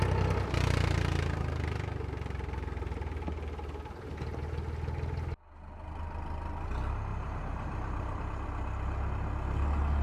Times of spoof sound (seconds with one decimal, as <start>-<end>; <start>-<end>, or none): 7.1-8.3